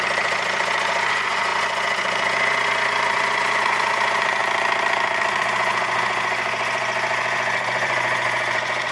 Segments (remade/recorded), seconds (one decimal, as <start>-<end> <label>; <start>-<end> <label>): 0.0-4.4 remade; 4.4-5.4 recorded; 5.4-8.9 remade